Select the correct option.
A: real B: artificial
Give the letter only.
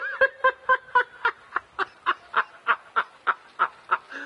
A